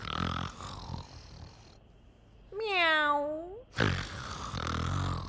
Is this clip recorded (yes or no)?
yes